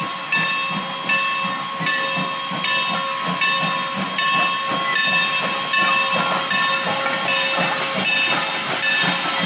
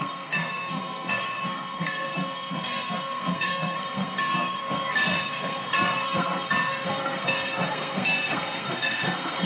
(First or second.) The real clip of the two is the first